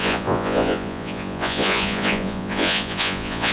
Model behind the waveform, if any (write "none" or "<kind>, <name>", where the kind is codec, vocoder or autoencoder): vocoder, Vocos